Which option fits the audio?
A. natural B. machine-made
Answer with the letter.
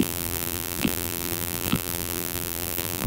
B